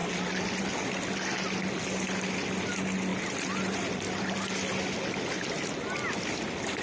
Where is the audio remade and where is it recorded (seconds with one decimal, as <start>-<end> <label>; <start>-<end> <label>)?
0.0-0.6 remade; 0.6-3.1 recorded; 3.1-4.4 remade; 4.4-6.8 recorded